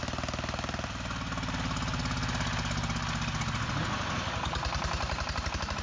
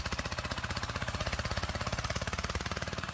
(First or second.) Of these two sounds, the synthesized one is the second